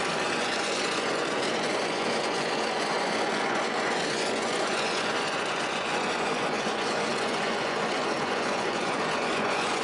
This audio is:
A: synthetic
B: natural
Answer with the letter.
A